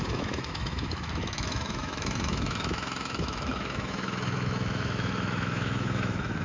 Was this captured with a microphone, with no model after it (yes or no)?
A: no